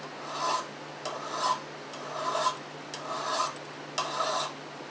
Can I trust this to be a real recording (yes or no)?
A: yes